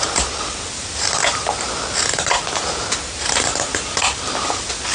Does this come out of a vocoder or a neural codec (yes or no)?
no